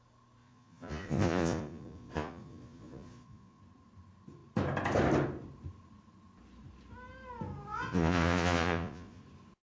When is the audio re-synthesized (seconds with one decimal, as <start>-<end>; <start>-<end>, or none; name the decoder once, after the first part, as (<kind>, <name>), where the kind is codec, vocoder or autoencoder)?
0.4-3.6 (vocoder, Vocos); 7.7-9.2